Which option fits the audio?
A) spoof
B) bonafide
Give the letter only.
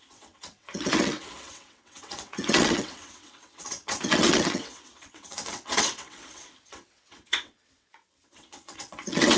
A